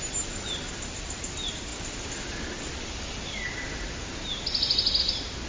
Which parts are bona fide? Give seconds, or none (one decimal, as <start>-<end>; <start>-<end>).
0.0-5.5